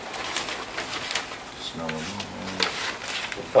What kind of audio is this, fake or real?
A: real